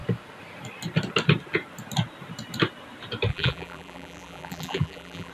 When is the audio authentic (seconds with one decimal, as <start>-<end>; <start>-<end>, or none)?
0.0-3.3